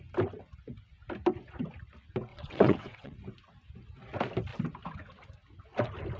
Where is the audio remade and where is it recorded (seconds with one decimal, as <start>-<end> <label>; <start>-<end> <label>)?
0.0-2.3 recorded; 2.3-3.2 remade; 3.2-6.2 recorded